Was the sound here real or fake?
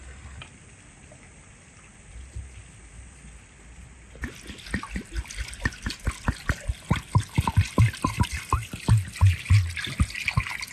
real